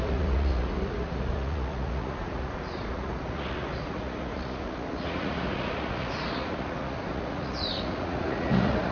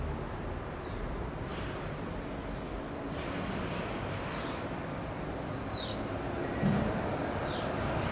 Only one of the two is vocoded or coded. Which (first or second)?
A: first